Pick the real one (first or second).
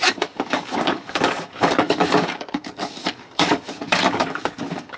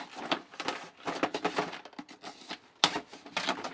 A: second